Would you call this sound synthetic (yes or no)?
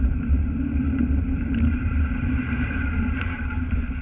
yes